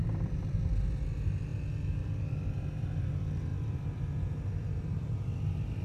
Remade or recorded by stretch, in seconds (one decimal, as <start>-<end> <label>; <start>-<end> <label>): 0.0-5.8 remade